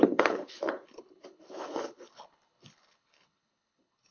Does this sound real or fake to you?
fake